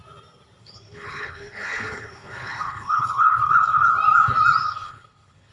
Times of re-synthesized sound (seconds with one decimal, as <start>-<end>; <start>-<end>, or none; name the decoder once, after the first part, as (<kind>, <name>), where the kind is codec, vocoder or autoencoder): 0.6-3.9 (codec, HILCodec); 4.6-5.5